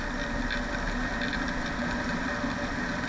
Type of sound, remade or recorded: recorded